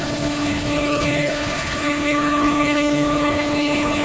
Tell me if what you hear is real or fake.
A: fake